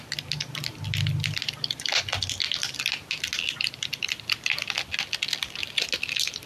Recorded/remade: recorded